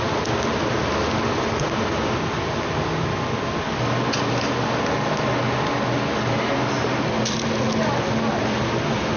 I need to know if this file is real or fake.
real